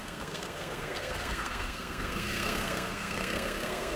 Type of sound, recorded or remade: remade